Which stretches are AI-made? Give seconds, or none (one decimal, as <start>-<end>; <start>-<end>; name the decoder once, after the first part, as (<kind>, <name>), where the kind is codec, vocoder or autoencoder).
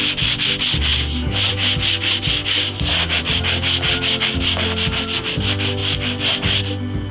none